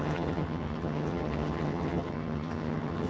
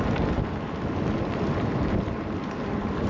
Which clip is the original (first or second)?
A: second